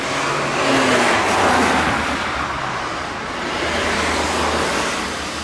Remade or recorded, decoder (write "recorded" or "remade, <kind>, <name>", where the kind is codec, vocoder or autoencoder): recorded